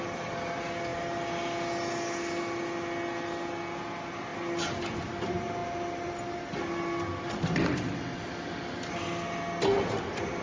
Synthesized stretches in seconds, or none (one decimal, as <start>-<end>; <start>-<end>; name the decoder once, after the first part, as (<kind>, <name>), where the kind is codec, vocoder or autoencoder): none